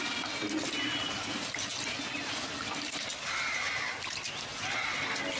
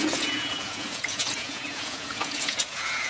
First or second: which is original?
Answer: first